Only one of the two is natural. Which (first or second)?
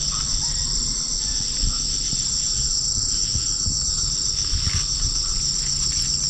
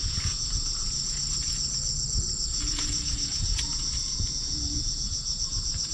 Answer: first